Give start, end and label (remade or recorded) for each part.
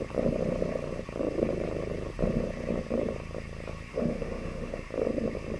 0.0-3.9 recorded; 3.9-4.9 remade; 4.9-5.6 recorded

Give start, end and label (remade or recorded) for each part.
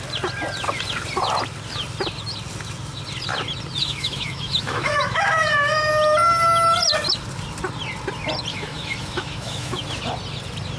0.0-3.8 recorded; 3.8-5.9 remade; 5.9-8.5 recorded; 8.5-9.8 remade; 9.8-10.8 recorded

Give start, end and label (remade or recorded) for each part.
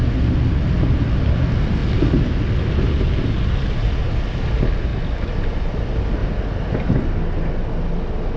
0.0-8.4 recorded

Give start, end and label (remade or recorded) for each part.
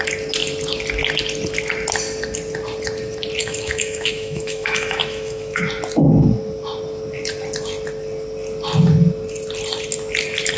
0.0-3.4 recorded; 3.4-5.6 remade; 5.6-10.6 recorded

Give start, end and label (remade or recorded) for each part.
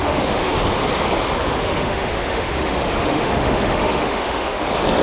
0.0-0.6 remade; 0.6-1.6 recorded; 1.6-4.6 remade; 4.6-5.0 recorded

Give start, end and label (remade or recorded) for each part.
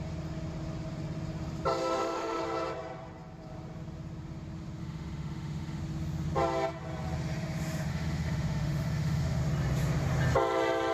0.0-1.8 recorded; 1.8-2.4 remade; 2.4-4.8 recorded; 4.8-5.8 remade; 5.8-7.9 recorded; 7.9-9.4 remade; 9.4-10.9 recorded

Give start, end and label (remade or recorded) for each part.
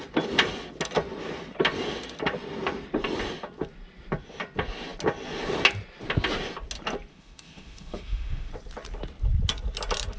0.0-7.1 recorded; 7.1-8.5 remade; 8.5-10.2 recorded